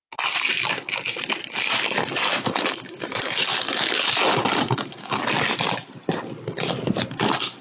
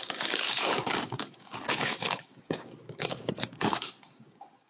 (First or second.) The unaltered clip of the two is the first